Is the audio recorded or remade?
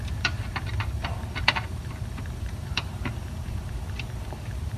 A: remade